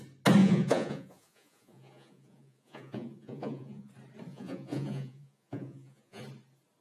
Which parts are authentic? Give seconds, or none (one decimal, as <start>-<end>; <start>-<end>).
0.0-0.4; 3.9-4.3; 6.2-6.8